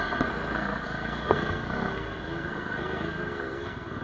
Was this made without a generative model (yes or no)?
no